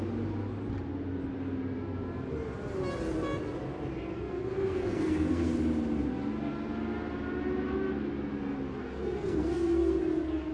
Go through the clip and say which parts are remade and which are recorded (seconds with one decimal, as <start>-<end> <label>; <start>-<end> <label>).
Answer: 0.0-4.1 recorded; 4.1-5.5 remade; 5.5-8.8 recorded; 8.8-10.0 remade; 10.0-10.5 recorded